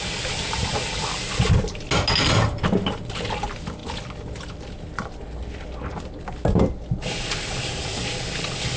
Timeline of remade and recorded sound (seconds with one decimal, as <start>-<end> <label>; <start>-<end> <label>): 0.0-8.8 recorded